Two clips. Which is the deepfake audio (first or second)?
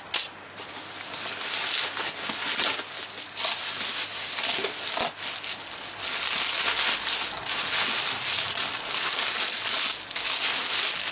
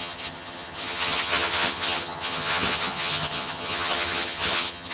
second